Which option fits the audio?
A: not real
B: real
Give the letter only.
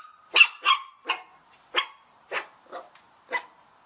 B